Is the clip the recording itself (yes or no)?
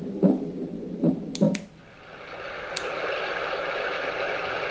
yes